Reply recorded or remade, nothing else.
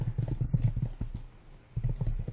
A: recorded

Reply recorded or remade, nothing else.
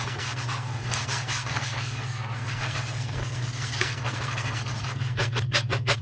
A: remade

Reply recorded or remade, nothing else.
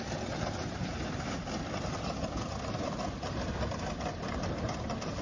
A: recorded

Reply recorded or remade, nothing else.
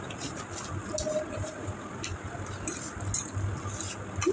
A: recorded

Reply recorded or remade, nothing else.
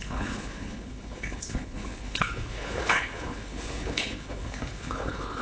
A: remade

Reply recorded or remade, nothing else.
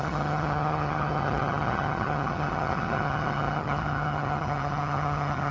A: remade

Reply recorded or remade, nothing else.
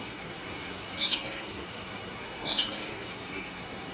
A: remade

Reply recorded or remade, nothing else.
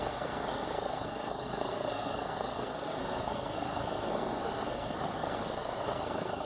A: remade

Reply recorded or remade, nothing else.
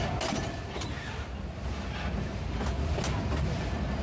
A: recorded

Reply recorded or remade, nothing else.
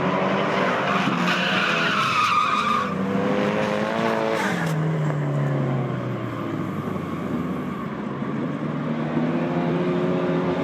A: recorded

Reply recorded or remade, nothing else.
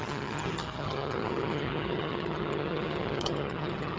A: remade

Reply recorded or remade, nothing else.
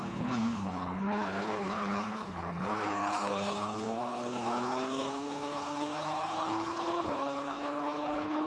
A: remade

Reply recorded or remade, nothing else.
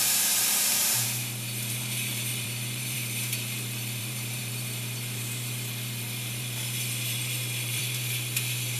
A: remade